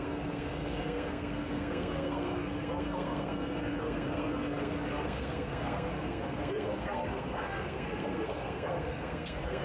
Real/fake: fake